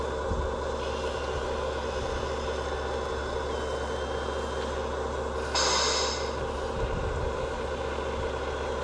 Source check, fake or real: real